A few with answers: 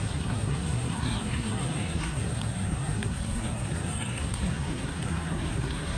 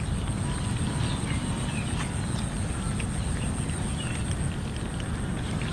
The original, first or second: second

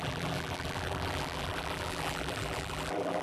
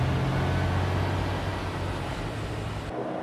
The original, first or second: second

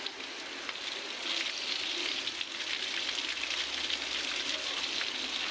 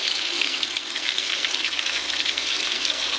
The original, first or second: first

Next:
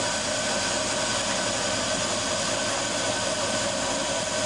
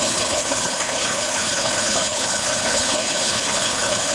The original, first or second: first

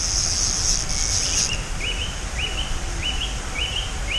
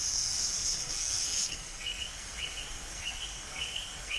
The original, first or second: first